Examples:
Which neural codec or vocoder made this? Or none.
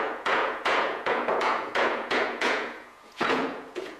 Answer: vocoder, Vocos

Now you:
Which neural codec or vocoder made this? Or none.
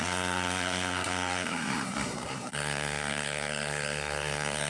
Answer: codec, SNAC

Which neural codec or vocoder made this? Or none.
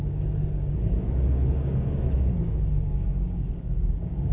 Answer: codec, DAC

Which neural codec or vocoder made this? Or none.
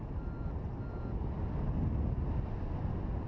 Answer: none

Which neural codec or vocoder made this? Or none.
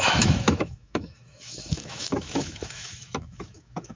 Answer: autoencoder, DAC-VAE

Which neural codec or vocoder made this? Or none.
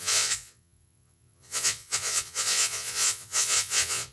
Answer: vocoder, Vocos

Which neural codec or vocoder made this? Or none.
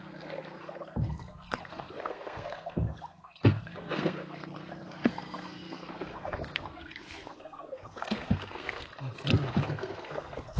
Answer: codec, SNAC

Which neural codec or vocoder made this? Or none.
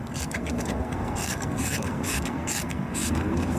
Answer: codec, SNAC